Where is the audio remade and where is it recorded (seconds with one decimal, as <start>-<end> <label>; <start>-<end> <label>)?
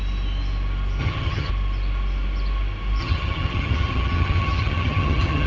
0.0-1.0 recorded; 1.0-1.5 remade; 1.5-3.0 recorded; 3.0-5.5 remade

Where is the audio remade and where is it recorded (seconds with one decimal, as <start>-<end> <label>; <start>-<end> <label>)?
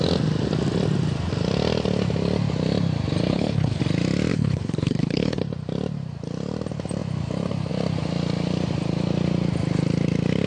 0.0-3.3 recorded; 3.3-3.8 remade; 3.8-4.3 recorded; 4.3-5.4 remade; 5.4-10.5 recorded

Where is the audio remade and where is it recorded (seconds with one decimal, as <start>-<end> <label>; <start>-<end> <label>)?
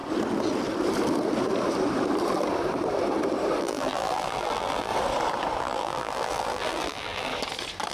0.0-3.6 recorded; 3.6-4.9 remade; 4.9-5.6 recorded; 5.6-7.3 remade; 7.3-7.9 recorded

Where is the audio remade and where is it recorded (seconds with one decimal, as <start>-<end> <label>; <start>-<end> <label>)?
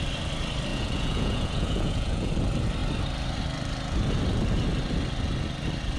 0.0-0.7 recorded; 0.7-2.3 remade; 2.3-6.0 recorded